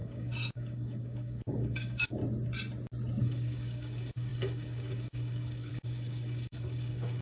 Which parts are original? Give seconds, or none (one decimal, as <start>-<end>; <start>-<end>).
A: 2.2-3.2